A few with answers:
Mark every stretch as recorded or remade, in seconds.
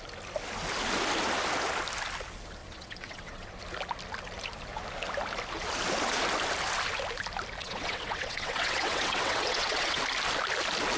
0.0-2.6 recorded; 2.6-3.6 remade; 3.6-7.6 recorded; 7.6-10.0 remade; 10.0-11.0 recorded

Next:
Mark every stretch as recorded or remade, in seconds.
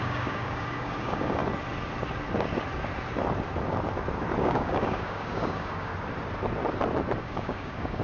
0.0-1.4 remade; 1.4-4.4 recorded; 4.4-5.9 remade; 5.9-7.2 recorded; 7.2-8.0 remade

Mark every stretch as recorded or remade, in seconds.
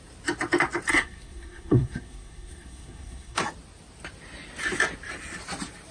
0.0-0.9 recorded; 0.9-3.4 remade; 3.4-5.9 recorded